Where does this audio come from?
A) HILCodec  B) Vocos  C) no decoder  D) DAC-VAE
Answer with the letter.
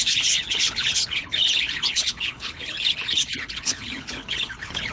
A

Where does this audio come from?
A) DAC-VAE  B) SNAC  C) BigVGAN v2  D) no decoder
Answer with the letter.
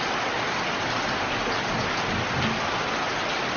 D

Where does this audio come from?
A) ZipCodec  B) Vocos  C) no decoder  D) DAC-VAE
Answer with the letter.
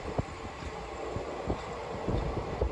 C